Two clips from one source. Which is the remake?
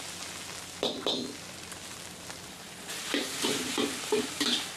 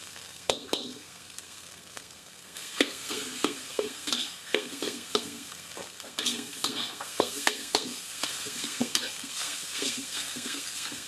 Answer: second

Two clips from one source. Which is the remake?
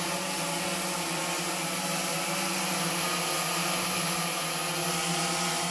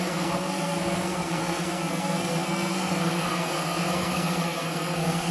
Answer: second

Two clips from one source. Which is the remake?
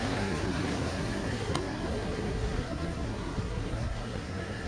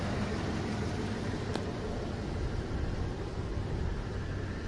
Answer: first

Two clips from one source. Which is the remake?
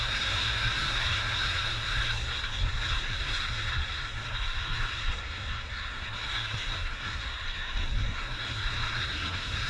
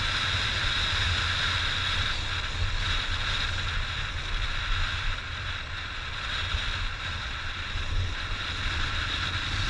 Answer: first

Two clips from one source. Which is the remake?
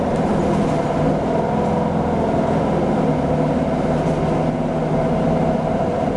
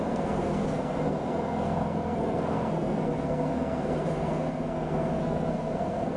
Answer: second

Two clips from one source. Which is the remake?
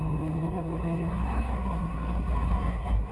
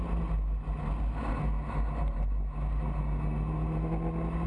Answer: first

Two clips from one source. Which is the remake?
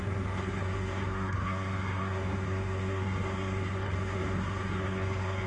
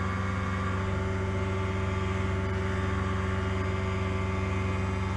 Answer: first